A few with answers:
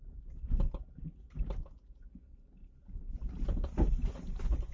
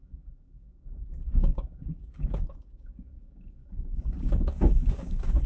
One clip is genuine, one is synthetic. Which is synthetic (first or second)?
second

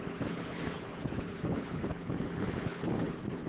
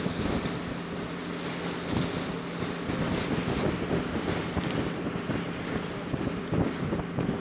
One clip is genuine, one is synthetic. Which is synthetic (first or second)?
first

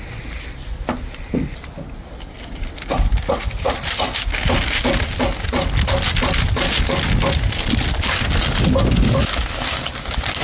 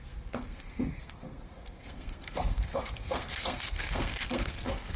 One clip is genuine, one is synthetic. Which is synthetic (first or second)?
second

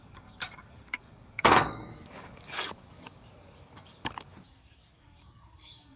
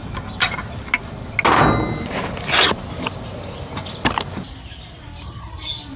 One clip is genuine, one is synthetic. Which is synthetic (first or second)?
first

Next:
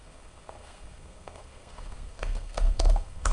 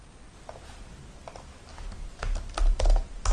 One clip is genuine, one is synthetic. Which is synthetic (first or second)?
first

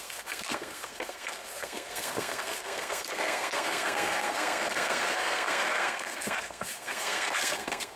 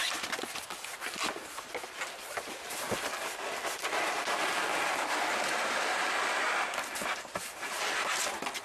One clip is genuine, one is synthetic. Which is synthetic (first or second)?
first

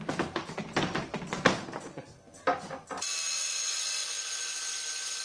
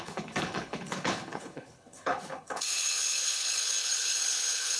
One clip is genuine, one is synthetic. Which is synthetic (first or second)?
second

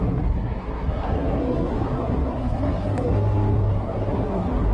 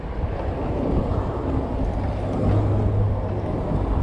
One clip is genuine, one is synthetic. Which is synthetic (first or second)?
first